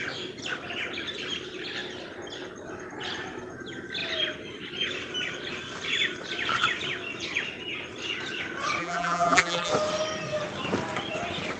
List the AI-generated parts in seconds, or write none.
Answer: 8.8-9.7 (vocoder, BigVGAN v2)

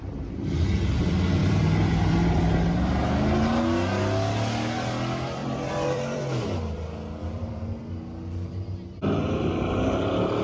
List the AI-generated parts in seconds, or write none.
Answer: 1.4-2.4 (vocoder, BigVGAN v2); 5.4-6.2; 7.2-7.8

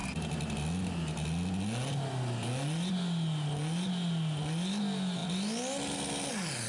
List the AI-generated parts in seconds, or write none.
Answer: none

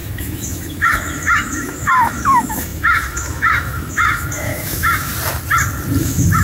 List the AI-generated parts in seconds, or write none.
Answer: 0.0-5.1 (autoencoder, DAC-VAE); 6.0-6.4

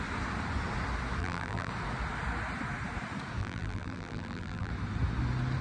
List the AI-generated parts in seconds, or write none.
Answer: 1.2-1.7 (vocoder, BigVGAN v2); 3.4-4.7

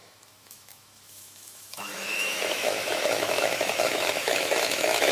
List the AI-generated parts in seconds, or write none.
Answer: 0.0-5.1 (autoencoder, DAC-VAE)

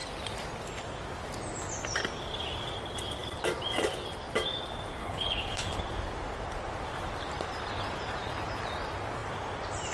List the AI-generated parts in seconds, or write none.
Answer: 5.0-5.8 (codec, HILCodec)